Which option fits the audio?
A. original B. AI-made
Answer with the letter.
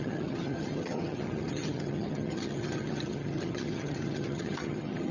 B